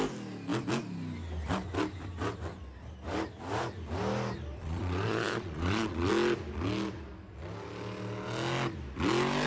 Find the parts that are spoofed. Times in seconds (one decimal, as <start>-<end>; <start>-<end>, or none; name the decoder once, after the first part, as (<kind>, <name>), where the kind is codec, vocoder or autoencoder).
4.6-6.1 (vocoder, Vocos)